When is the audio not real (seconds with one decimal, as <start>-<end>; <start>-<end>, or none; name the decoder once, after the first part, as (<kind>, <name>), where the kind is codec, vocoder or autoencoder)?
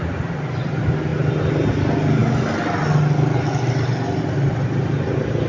none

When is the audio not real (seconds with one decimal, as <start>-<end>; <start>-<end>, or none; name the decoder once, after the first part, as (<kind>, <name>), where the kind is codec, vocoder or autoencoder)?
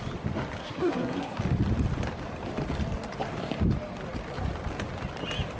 0.6-1.4 (codec, SNAC)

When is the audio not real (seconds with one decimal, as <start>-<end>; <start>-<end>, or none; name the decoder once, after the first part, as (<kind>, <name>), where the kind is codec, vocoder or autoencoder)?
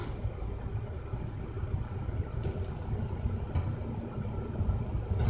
none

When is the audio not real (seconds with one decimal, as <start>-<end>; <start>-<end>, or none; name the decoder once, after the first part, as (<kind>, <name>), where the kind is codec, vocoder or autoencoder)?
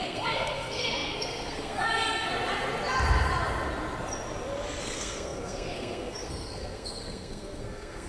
0.0-2.3 (codec, SNAC); 4.8-8.1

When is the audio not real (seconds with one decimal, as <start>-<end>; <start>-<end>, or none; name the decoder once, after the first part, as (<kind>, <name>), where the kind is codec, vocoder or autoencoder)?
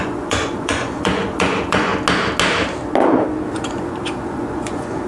0.0-1.9 (vocoder, Vocos); 3.5-5.1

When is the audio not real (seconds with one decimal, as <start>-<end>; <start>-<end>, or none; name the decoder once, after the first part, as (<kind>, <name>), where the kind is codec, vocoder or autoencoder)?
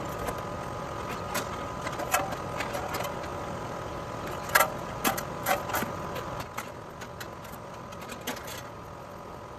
3.3-3.8 (vocoder, BigVGAN v2)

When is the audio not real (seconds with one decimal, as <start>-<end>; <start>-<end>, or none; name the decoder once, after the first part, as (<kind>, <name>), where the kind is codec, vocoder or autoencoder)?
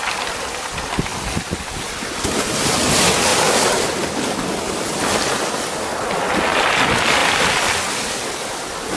none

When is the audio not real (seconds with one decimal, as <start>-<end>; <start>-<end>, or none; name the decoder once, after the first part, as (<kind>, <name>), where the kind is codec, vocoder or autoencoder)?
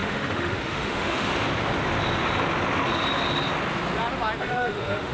0.0-1.3 (autoencoder, DAC-VAE); 4.4-5.1